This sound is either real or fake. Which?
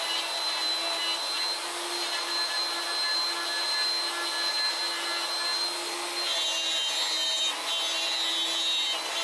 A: real